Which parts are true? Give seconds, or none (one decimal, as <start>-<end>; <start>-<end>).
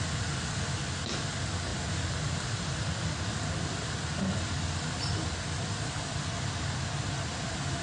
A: 0.0-7.8